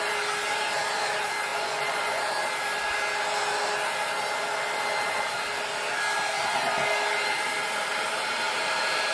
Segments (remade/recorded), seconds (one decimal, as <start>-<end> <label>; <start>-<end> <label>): 0.0-1.5 recorded; 1.5-2.2 remade; 2.2-9.1 recorded